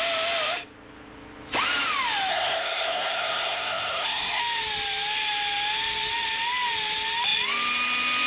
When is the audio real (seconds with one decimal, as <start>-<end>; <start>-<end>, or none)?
0.0-2.3; 4.4-8.3